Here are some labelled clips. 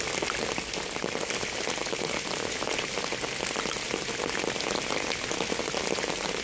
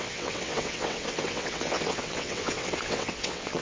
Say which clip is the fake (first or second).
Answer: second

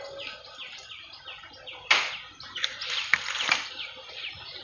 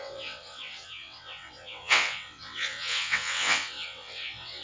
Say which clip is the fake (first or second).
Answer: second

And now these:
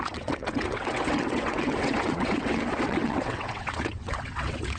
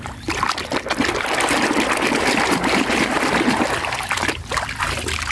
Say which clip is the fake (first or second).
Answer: first